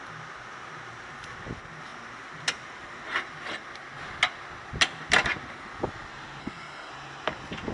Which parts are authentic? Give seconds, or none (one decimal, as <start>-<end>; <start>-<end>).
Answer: 0.0-6.4; 6.9-7.7